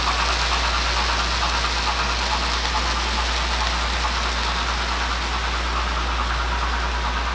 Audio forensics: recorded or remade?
recorded